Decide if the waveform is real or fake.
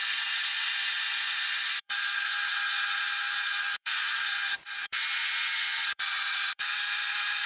fake